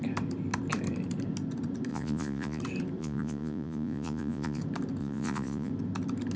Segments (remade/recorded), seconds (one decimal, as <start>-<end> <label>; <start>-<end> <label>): 0.0-1.9 recorded; 1.9-2.6 remade; 2.6-3.0 recorded; 3.0-4.6 remade; 4.6-5.0 recorded; 5.0-5.7 remade; 5.7-6.4 recorded